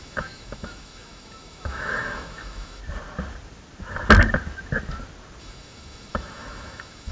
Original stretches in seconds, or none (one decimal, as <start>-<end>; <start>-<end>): 2.8-5.4